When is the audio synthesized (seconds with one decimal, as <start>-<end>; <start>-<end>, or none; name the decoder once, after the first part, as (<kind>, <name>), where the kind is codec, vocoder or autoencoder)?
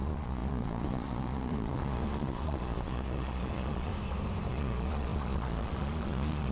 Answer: 0.0-3.9 (vocoder, Vocos); 4.5-6.5